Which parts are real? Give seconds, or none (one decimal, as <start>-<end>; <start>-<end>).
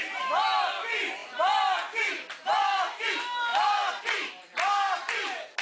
0.0-5.6